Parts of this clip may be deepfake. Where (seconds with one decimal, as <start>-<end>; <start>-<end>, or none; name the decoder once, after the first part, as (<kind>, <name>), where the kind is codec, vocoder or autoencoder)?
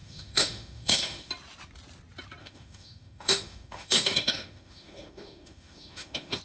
0.0-1.3 (autoencoder, DAC-VAE); 2.4-6.4